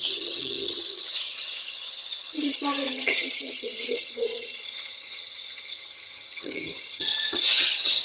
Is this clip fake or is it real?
fake